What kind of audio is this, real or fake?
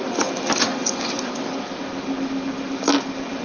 real